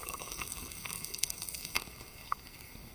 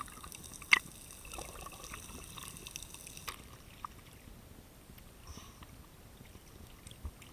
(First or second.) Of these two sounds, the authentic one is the second